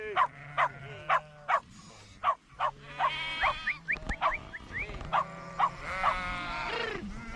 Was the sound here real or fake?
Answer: real